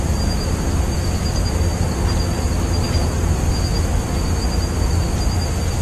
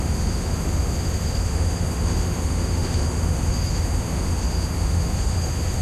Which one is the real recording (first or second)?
first